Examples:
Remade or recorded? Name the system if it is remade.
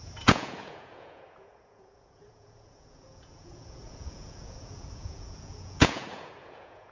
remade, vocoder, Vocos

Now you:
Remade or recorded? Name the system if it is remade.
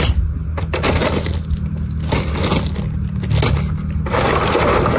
recorded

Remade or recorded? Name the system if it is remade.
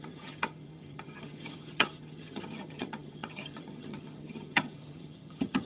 remade, vocoder, HiFi-GAN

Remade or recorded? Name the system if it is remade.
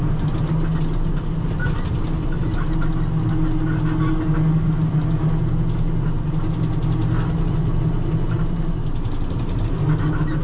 recorded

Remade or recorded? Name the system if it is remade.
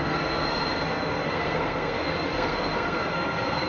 remade, codec, SNAC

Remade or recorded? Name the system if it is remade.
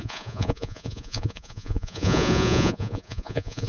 remade, vocoder, Vocos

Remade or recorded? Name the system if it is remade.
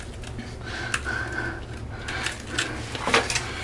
recorded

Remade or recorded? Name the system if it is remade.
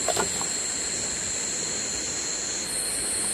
recorded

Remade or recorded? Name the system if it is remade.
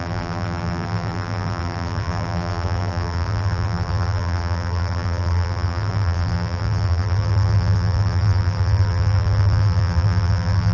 remade, vocoder, BigVGAN v2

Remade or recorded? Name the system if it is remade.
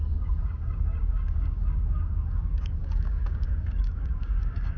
remade, codec, DAC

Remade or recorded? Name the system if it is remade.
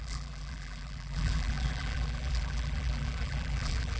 remade, vocoder, BigVGAN v2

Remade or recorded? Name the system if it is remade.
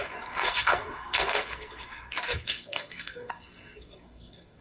remade, codec, SNAC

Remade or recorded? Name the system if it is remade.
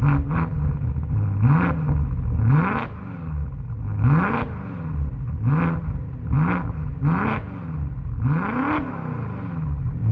recorded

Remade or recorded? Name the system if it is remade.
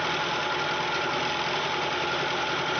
recorded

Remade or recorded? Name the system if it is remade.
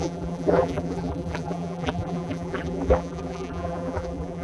remade, vocoder, BigVGAN v2